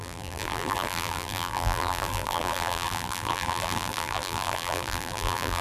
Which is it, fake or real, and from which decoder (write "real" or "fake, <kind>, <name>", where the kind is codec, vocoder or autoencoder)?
fake, vocoder, BigVGAN v2